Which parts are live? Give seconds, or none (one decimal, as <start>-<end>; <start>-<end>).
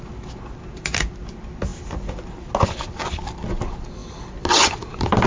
0.0-5.3